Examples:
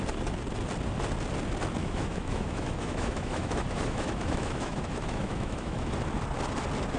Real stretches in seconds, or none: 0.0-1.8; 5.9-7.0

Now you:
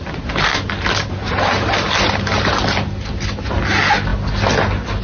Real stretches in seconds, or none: 2.4-5.0